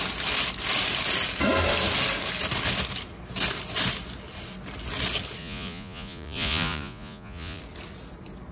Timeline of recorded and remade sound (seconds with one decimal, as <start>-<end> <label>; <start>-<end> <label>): 0.0-5.4 recorded; 5.4-7.6 remade; 7.6-8.5 recorded